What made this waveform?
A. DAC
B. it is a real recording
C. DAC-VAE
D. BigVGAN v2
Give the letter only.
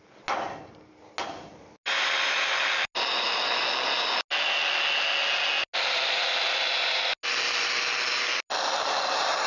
B